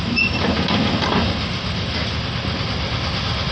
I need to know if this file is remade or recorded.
recorded